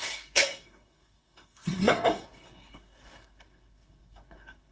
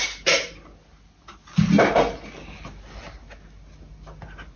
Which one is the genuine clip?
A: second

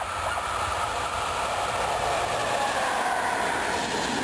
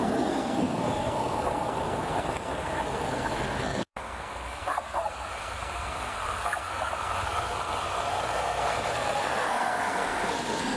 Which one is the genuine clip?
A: first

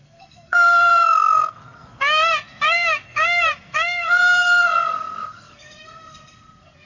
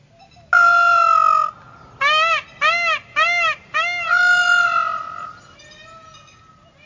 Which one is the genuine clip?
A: second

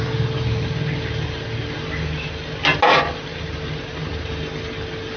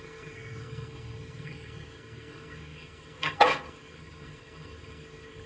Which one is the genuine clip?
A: first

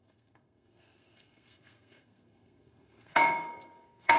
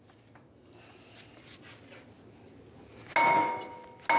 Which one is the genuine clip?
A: second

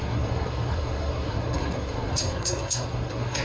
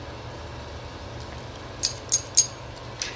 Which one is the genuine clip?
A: second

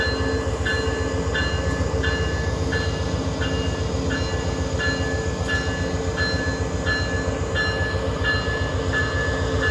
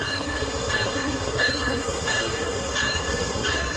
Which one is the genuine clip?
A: first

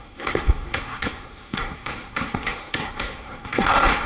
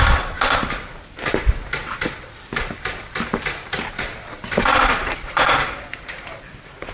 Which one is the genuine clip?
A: second